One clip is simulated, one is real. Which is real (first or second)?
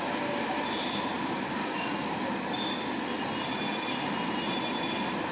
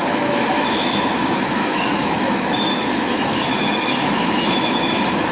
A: first